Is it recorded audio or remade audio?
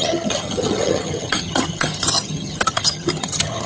remade